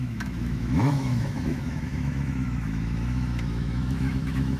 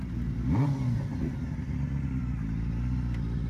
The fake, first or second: first